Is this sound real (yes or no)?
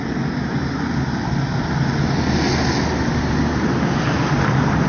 yes